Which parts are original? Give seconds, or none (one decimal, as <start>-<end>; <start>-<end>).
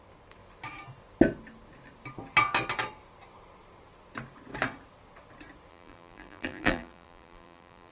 0.0-5.7